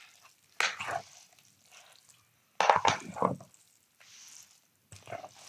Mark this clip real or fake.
real